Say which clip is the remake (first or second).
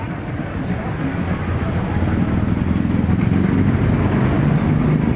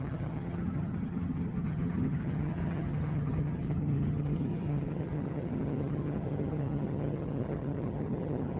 second